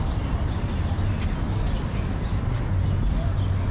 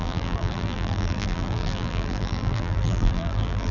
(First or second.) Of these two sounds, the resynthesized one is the second